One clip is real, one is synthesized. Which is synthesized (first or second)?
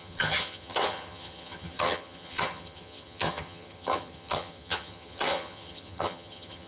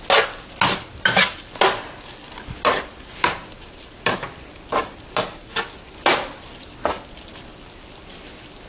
first